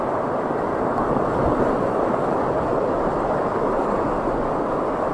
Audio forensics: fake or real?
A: real